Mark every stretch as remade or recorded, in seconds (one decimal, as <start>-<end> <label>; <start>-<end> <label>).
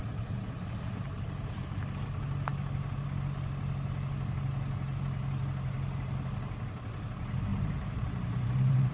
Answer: 0.0-1.8 remade; 1.8-7.5 recorded; 7.5-8.9 remade